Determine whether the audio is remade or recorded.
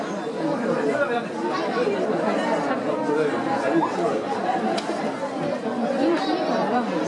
recorded